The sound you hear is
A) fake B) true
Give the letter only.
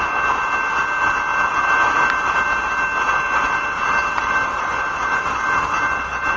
B